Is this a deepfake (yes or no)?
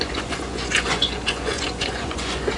yes